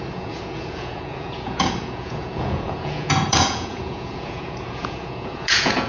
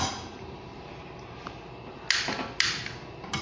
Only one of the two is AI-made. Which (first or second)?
first